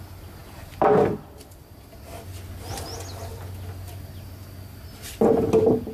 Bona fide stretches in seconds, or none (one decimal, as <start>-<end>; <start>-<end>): 0.0-5.9